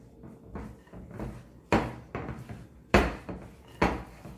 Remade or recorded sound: recorded